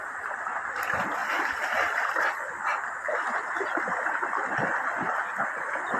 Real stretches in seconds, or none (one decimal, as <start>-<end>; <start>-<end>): 0.0-6.0